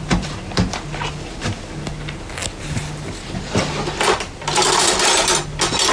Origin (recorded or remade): recorded